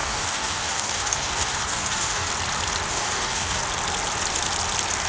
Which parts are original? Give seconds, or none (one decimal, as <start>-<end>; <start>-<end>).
2.3-2.9; 3.6-5.1